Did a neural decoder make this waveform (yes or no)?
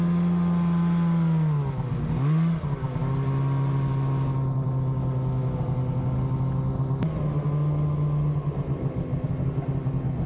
no